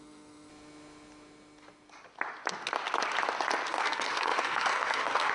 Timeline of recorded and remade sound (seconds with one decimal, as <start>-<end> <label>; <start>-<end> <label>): 0.0-0.5 remade; 0.5-3.7 recorded; 3.7-5.3 remade